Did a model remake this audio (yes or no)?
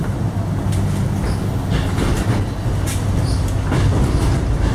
no